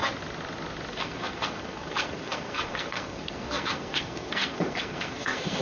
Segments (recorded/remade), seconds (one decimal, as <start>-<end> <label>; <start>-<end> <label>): 0.0-0.9 recorded; 0.9-5.6 remade